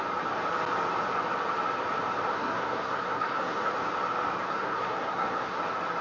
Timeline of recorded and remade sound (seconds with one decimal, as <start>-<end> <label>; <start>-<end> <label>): 0.0-2.3 recorded; 2.3-3.7 remade; 3.7-4.5 recorded; 4.5-5.6 remade; 5.6-6.0 recorded

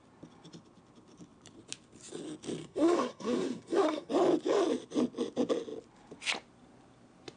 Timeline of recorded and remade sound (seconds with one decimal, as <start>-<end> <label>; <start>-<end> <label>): 0.0-2.6 recorded; 2.6-4.1 remade; 4.1-7.4 recorded